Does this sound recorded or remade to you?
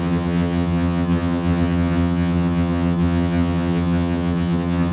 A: remade